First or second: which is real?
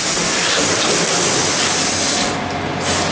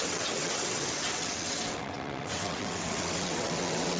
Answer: first